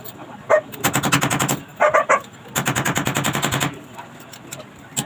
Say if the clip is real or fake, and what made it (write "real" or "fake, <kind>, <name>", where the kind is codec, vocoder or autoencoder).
real